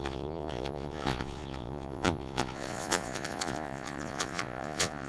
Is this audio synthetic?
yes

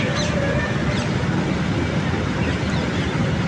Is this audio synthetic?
no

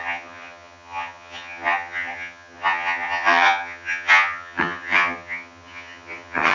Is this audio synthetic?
yes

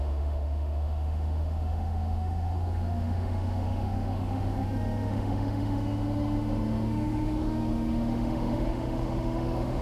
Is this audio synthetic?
yes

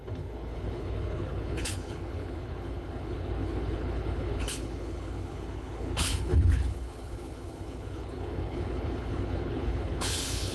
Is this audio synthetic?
yes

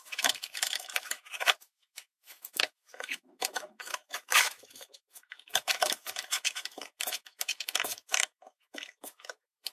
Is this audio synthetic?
yes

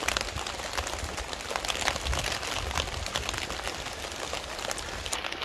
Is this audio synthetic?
no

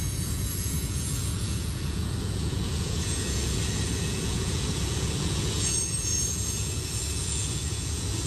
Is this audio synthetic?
yes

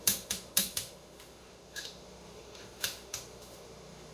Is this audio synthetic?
yes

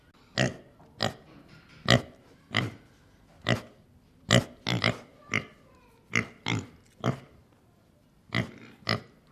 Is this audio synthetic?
no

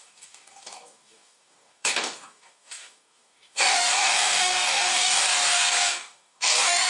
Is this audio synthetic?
yes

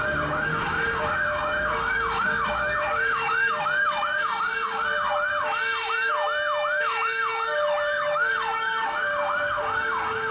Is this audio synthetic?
yes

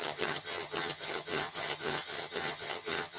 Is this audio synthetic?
yes